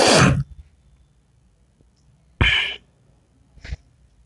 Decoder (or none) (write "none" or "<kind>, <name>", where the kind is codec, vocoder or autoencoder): none